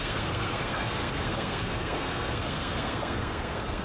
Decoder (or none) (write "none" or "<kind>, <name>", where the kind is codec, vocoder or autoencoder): codec, SNAC